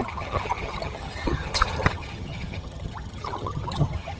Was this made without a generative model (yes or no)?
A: no